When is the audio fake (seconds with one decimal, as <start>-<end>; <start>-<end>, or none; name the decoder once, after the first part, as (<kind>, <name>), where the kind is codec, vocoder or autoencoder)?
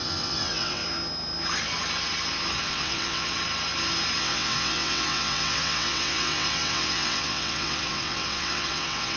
0.0-0.8 (vocoder, WaveNeXt); 2.6-3.3; 4.2-9.2